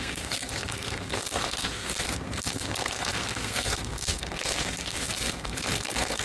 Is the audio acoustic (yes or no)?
no